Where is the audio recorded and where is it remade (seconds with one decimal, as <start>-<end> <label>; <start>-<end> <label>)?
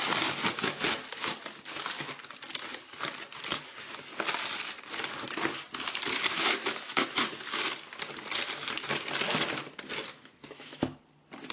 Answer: 0.0-6.3 recorded; 6.3-7.1 remade; 7.1-10.1 recorded; 10.1-11.0 remade; 11.0-11.5 recorded